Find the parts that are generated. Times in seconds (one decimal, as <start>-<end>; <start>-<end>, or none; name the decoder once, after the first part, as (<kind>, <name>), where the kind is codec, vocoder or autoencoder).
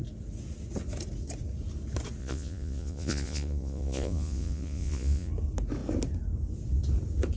2.2-5.3 (vocoder, Vocos)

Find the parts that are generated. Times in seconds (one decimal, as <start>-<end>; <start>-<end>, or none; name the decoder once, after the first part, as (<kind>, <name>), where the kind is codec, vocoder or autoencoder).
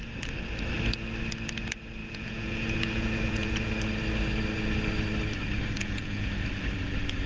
2.0-3.7 (vocoder, Vocos); 5.8-6.3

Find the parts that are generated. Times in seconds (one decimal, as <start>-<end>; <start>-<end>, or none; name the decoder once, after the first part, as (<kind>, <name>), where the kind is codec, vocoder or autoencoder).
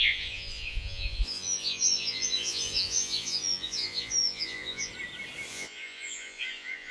0.0-4.9 (vocoder, Vocos); 5.5-6.9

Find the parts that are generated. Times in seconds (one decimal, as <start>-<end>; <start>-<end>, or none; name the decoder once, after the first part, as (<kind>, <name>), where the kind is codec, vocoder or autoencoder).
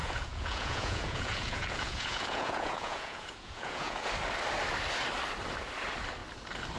0.0-4.1 (vocoder, Vocos)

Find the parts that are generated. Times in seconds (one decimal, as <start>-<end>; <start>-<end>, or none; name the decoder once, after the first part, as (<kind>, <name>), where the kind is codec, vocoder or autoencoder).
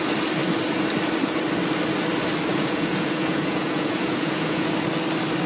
2.5-4.7 (vocoder, Vocos)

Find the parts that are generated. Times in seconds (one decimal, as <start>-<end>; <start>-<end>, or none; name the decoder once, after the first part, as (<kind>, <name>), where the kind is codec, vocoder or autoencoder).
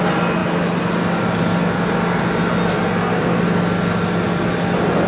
none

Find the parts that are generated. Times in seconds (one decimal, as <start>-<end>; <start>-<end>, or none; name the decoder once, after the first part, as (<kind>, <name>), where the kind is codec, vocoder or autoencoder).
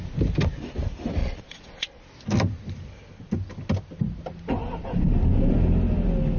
1.2-2.0 (vocoder, Vocos)